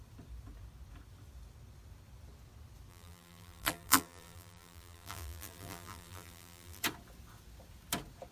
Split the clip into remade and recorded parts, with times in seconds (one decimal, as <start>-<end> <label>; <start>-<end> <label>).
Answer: 0.0-2.9 recorded; 2.9-6.8 remade; 6.8-8.3 recorded